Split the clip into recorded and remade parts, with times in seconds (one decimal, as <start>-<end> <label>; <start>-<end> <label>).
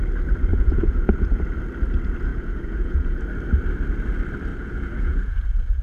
0.0-0.5 recorded; 0.5-1.4 remade; 1.4-2.3 recorded; 2.3-3.2 remade; 3.2-4.5 recorded; 4.5-5.8 remade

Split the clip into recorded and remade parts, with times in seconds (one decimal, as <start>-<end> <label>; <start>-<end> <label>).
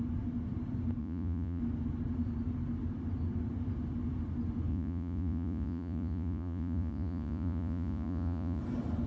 0.0-1.0 recorded; 1.0-1.6 remade; 1.6-4.7 recorded; 4.7-8.6 remade; 8.6-9.1 recorded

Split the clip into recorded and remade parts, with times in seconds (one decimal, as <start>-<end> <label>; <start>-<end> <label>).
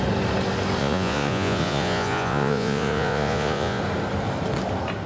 0.0-0.8 recorded; 0.8-3.8 remade; 3.8-5.1 recorded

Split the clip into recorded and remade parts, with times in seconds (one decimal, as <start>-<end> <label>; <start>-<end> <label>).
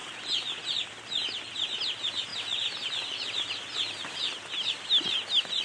0.0-5.6 recorded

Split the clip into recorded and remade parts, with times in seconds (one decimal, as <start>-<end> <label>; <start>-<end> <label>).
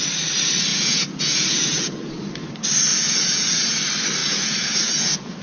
0.0-0.7 recorded; 0.7-2.1 remade; 2.1-2.9 recorded; 2.9-3.8 remade; 3.8-4.2 recorded; 4.2-5.4 remade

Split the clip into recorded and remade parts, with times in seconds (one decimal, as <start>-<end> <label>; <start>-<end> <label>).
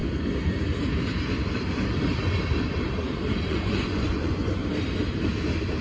0.0-3.5 recorded; 3.5-4.6 remade; 4.6-5.8 recorded